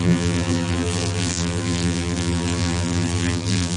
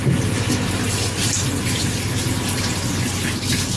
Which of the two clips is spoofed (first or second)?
first